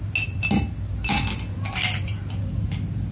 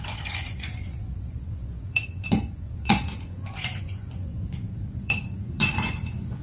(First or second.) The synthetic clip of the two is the second